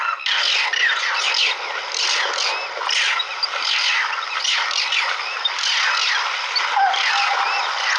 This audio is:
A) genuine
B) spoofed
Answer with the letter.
A